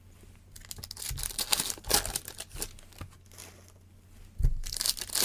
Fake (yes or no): no